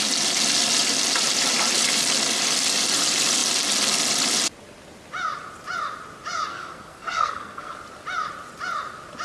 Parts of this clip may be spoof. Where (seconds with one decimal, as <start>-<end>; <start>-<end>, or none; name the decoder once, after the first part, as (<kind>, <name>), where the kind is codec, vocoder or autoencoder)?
6.5-7.7 (codec, SNAC)